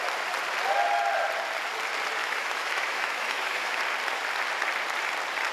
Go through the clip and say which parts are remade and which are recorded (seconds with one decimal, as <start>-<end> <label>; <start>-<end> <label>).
0.0-2.2 recorded; 2.2-3.8 remade; 3.8-5.5 recorded